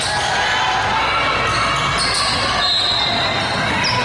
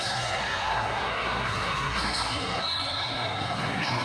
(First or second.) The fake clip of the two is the second